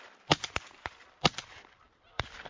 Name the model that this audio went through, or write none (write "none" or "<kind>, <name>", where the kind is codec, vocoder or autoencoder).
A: vocoder, BigVGAN v2